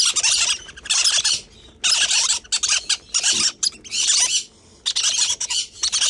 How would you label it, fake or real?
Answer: real